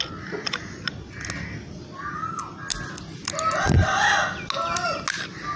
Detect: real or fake real